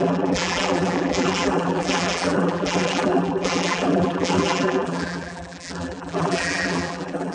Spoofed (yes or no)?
yes